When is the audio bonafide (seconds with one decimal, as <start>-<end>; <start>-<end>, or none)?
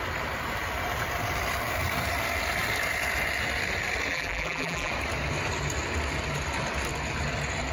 0.0-4.1; 4.9-7.7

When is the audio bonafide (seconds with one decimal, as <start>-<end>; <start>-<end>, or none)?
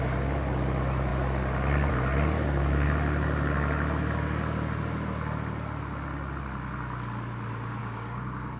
0.0-7.8